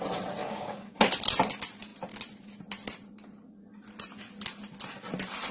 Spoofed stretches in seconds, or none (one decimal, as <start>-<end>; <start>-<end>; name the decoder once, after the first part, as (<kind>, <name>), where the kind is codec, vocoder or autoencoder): 0.4-1.1 (codec, DAC)